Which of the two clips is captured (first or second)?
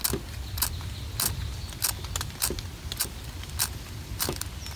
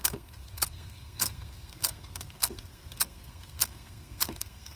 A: first